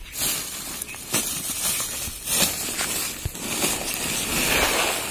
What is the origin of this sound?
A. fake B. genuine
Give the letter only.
B